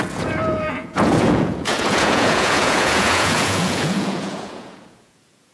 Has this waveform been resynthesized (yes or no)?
yes